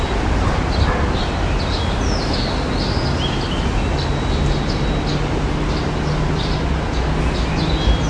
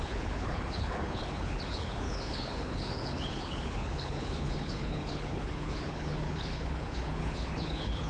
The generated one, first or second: second